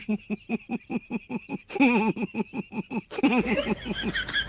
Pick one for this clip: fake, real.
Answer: real